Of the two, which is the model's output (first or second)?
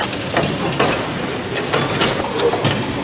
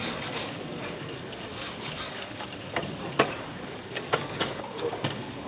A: second